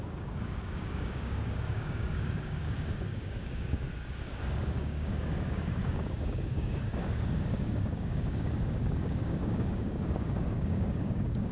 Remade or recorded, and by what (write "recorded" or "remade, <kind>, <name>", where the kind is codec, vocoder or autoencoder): remade, codec, DAC